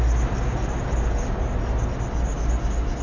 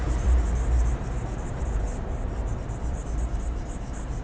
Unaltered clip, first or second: first